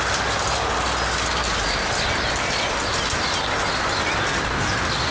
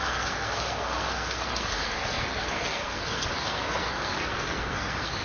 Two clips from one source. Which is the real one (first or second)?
first